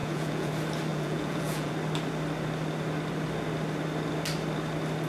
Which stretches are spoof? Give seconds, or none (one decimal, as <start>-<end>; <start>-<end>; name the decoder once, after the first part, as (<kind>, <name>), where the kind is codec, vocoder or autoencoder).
0.0-0.5 (vocoder, Vocos); 0.9-1.7